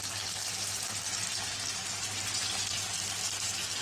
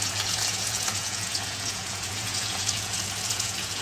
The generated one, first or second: second